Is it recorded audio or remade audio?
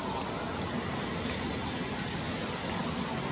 recorded